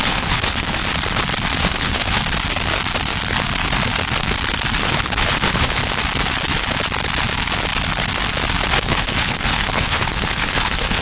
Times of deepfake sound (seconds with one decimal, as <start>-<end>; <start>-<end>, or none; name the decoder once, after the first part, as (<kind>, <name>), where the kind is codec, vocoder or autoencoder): 0.0-0.8 (codec, HILCodec); 1.6-2.2; 4.8-5.8; 8.7-11.0